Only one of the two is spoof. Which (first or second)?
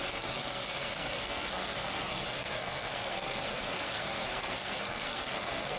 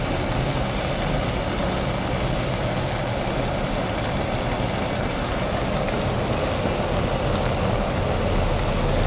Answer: first